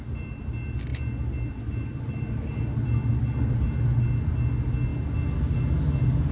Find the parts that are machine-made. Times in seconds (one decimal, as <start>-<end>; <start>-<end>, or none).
none